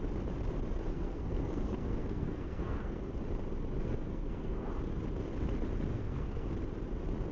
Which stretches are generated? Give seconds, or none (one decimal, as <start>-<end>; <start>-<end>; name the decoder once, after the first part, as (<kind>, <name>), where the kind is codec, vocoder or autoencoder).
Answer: 0.9-3.1 (codec, SNAC); 3.8-4.7; 5.9-6.5